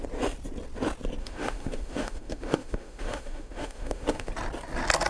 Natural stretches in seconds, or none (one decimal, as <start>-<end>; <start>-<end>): 0.0-1.2; 4.3-5.1